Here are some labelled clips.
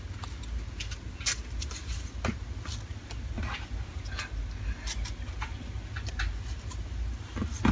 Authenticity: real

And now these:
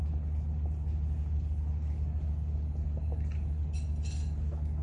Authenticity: real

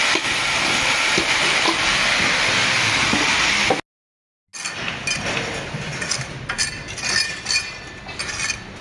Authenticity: real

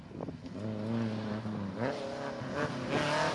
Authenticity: real